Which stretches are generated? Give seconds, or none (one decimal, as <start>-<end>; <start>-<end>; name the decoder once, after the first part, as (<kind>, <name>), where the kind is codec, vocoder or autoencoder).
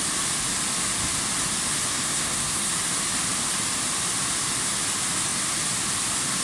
1.9-2.7 (codec, SNAC)